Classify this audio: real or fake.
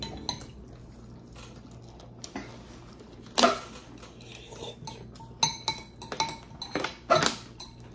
real